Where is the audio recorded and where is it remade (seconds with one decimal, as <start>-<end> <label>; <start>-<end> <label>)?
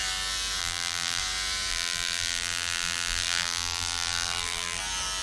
0.0-0.6 recorded; 0.6-1.2 remade; 1.2-1.7 recorded; 1.7-4.8 remade; 4.8-5.2 recorded